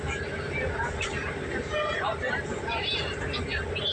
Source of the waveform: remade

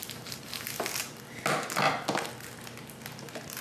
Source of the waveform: recorded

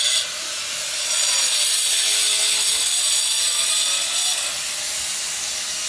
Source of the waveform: recorded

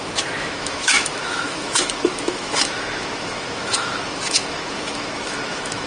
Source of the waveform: remade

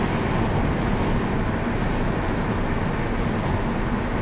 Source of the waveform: recorded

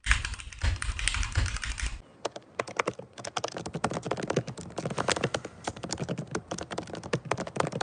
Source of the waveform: recorded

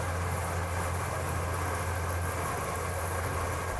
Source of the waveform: recorded